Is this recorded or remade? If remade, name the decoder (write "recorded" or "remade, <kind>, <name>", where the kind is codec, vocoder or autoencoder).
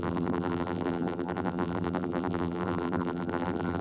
remade, vocoder, BigVGAN v2